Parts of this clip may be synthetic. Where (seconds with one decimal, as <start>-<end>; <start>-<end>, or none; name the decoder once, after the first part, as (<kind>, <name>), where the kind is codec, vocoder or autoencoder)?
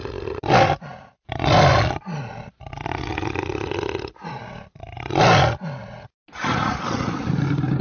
0.9-2.2 (vocoder, BigVGAN v2); 3.5-4.4